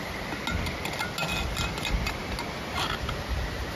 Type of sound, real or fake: real